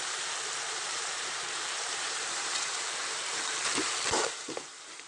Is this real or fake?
fake